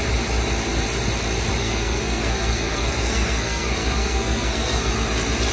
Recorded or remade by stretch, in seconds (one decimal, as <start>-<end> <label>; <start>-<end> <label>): 0.0-1.6 recorded; 1.6-4.9 remade; 4.9-5.5 recorded